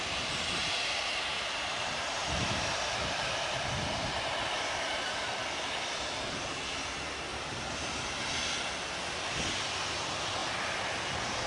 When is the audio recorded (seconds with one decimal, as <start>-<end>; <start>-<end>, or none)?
0.0-0.6; 1.6-2.2; 5.9-7.3; 8.2-10.4; 11.1-11.5